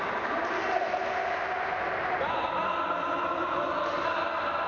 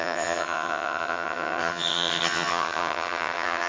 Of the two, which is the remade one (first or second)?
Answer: second